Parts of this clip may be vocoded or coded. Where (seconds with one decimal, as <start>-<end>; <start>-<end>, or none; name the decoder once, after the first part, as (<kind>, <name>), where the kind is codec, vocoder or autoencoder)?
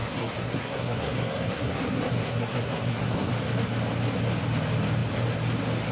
0.0-3.3 (codec, SNAC)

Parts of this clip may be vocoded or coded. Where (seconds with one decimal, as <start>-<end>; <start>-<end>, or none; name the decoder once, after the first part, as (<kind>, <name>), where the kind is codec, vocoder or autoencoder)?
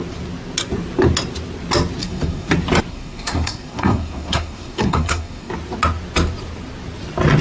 2.0-2.5 (codec, SNAC); 2.9-5.5